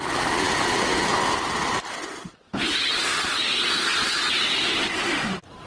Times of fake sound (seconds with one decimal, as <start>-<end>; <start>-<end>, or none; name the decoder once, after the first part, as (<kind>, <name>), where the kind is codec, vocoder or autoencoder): 3.1-4.3 (vocoder, Vocos)